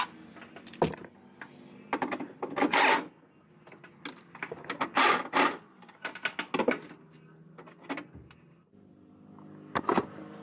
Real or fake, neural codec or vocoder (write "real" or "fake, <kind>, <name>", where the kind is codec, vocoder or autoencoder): real